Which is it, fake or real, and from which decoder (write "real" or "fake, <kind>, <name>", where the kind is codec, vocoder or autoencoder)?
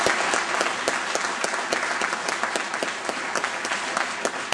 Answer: real